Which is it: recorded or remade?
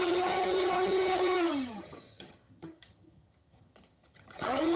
remade